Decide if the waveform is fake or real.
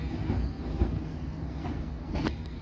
fake